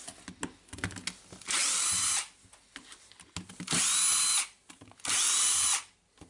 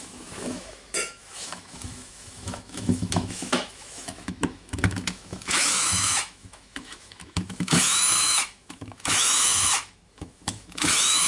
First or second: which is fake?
second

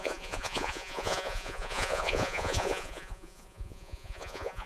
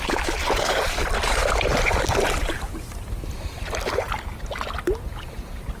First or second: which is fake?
first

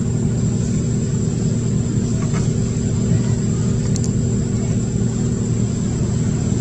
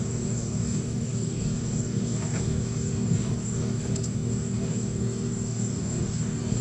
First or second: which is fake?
second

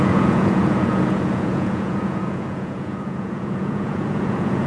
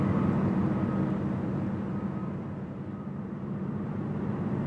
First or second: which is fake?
first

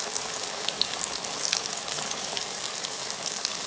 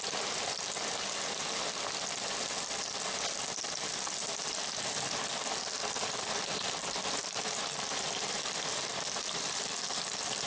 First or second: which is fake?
first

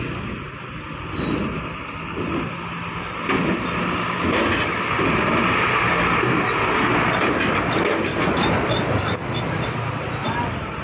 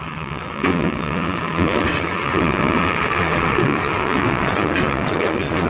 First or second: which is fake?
second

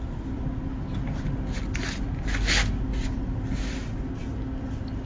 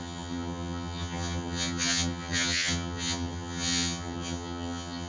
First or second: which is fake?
second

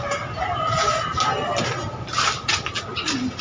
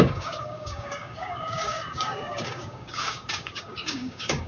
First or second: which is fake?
second